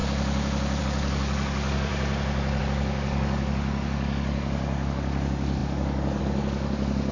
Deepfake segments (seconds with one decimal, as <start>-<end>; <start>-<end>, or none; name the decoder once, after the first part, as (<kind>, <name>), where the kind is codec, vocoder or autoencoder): 0.8-1.9 (codec, DAC); 2.6-7.1